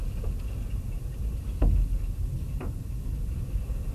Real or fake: real